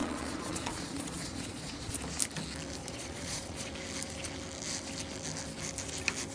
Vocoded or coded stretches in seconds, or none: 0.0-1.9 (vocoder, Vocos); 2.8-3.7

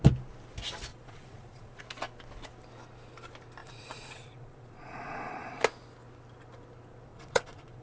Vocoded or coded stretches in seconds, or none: 0.9-1.8 (vocoder, Vocos); 3.6-5.6; 7.1-7.8

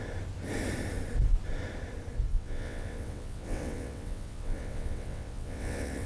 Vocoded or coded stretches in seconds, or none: 2.3-6.1 (vocoder, WaveNeXt)